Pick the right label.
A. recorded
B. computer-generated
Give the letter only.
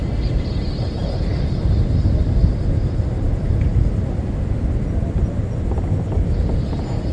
A